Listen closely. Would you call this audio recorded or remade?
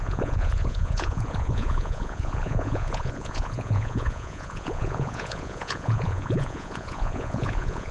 remade